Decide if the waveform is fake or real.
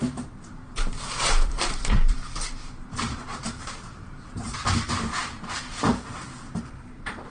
fake